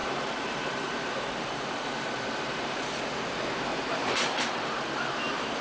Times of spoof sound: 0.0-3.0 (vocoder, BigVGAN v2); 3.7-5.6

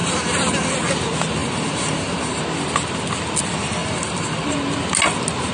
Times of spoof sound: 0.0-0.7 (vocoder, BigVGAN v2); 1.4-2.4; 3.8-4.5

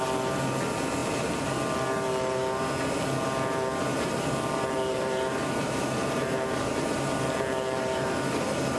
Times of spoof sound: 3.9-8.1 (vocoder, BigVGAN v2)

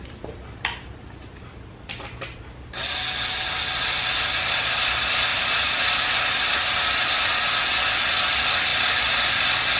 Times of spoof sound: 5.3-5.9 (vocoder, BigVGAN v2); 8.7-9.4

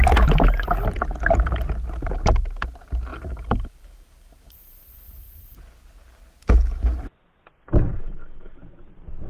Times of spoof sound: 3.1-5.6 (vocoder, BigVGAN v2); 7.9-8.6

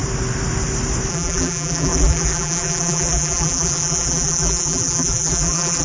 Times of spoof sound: 1.1-5.8 (vocoder, BigVGAN v2)